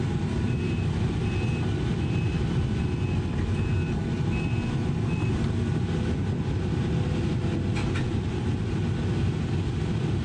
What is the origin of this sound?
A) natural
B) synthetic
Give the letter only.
A